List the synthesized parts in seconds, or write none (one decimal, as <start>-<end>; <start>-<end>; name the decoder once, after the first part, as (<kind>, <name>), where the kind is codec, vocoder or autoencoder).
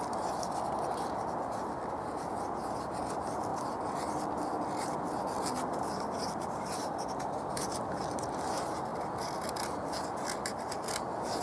none